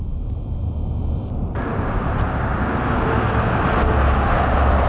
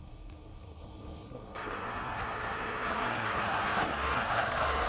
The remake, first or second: second